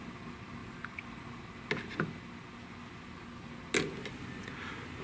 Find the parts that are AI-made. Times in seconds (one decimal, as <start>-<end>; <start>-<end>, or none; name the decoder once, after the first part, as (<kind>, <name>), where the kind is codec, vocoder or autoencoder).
none